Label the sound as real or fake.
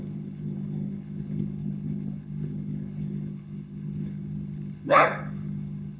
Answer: fake